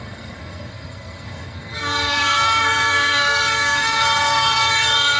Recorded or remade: remade